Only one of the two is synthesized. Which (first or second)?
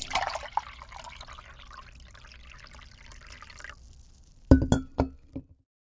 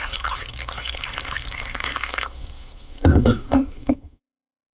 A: second